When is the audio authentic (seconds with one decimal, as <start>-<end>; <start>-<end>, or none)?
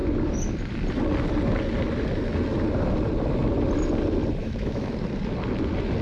0.0-4.4; 4.9-6.0